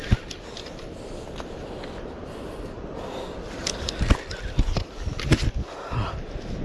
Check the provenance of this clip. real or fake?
real